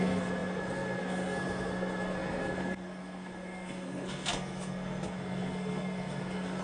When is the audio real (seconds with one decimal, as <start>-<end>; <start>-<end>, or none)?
none